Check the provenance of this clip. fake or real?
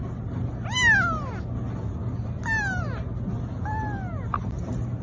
real